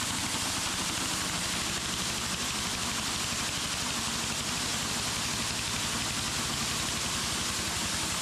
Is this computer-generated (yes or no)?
no